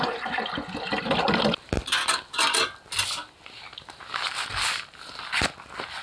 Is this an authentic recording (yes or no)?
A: yes